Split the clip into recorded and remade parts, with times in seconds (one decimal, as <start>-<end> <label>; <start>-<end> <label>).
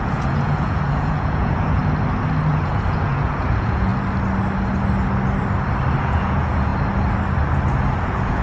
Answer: 0.0-1.8 remade; 1.8-2.5 recorded; 2.5-3.9 remade; 3.9-6.0 recorded; 6.0-6.7 remade; 6.7-8.0 recorded; 8.0-8.4 remade